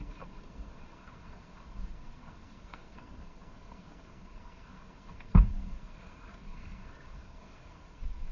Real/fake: fake